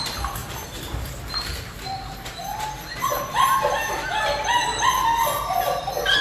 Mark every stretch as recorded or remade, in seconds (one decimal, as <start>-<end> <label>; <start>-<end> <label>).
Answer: 0.0-6.2 recorded